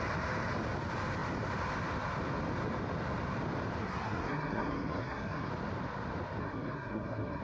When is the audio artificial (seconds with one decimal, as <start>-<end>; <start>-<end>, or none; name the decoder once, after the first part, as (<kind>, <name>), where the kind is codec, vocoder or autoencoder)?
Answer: 3.8-5.5 (codec, SNAC); 6.4-7.4